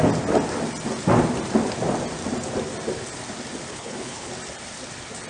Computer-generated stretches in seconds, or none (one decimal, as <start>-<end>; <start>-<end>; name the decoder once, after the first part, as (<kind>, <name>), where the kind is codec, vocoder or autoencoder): 3.7-4.3 (codec, HILCodec)